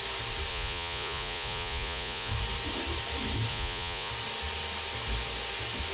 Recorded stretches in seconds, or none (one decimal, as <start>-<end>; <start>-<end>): 0.0-0.5; 2.3-3.5; 4.1-5.9